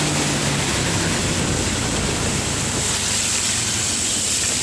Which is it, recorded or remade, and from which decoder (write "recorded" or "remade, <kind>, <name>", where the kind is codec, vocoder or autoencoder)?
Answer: recorded